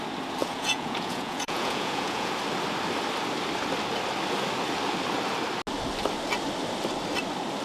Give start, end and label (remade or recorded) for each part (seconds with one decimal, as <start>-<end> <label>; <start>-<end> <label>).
0.0-0.4 recorded; 0.4-2.3 remade; 2.3-7.6 recorded